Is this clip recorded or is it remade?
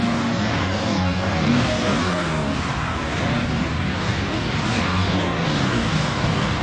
remade